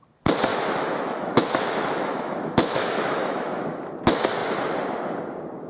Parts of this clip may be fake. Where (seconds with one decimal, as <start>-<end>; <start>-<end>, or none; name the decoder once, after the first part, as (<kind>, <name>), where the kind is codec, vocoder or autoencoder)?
0.5-3.9 (autoencoder, DAC-VAE)

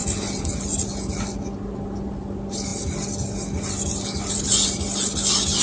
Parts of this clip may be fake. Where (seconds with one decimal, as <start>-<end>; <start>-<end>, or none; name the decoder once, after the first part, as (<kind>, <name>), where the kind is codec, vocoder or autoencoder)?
none

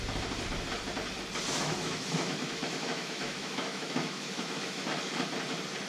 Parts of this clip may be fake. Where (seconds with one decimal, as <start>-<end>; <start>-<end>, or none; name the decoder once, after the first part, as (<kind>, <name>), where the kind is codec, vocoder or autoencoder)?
1.5-5.0 (autoencoder, DAC-VAE)

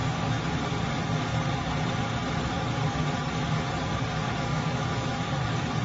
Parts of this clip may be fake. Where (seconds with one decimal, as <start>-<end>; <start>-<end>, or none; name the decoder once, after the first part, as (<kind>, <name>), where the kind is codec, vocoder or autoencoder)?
0.0-0.5 (autoencoder, DAC-VAE); 4.5-5.2

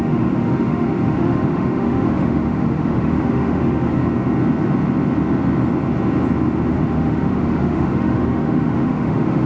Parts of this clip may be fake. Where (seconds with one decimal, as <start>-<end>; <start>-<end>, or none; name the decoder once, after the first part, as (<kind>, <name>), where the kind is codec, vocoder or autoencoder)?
0.0-4.0 (autoencoder, DAC-VAE); 6.7-9.5

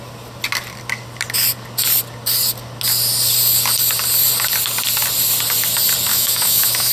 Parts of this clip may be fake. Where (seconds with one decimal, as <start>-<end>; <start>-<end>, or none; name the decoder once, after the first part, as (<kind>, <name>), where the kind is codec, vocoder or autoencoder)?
6.1-6.9 (autoencoder, DAC-VAE)

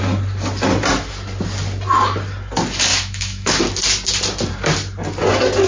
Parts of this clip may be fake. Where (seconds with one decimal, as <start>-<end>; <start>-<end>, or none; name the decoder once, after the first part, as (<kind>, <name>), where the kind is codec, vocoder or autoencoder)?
2.9-3.6 (autoencoder, DAC-VAE)

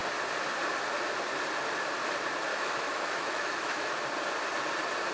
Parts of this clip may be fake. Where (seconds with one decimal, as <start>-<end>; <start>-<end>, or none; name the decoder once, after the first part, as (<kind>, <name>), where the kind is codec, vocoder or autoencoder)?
2.5-3.9 (autoencoder, DAC-VAE)